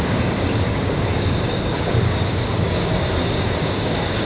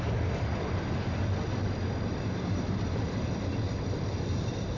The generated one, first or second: first